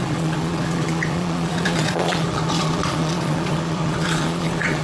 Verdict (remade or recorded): remade